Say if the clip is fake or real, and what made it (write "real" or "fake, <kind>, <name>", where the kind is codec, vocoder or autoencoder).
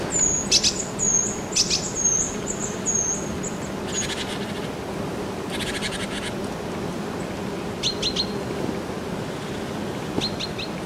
real